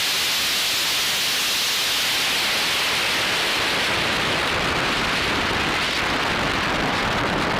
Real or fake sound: real